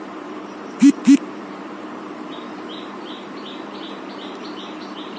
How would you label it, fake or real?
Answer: fake